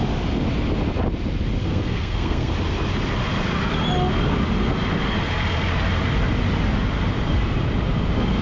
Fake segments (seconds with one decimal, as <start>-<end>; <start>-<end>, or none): 1.6-2.5

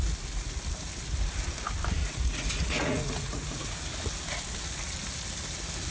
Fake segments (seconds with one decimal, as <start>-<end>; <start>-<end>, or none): 2.0-3.8

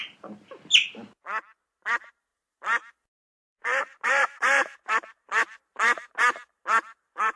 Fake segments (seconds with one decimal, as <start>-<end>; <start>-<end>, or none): 1.7-2.3; 3.4-7.4

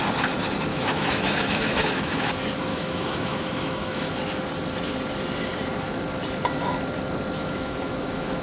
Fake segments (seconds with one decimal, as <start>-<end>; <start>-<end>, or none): 0.7-2.3; 2.7-4.1; 7.4-8.4